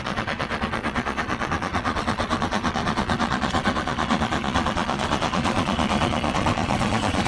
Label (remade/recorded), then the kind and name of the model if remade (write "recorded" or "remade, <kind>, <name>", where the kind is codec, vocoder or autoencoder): remade, vocoder, Vocos